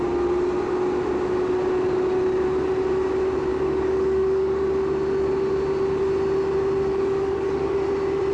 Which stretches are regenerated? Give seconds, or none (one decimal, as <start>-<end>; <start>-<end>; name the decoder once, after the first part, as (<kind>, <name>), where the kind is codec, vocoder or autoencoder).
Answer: 3.5-4.6 (codec, DAC); 6.9-7.9